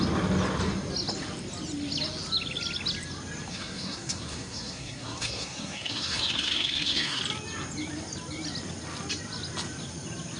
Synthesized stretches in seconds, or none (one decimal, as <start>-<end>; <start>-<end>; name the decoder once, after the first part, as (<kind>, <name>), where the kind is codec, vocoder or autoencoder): 3.5-7.2 (codec, SNAC)